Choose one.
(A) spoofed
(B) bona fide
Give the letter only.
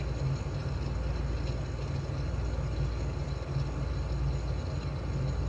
B